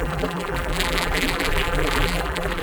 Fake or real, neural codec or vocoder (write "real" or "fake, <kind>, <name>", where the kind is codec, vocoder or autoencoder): fake, vocoder, BigVGAN v2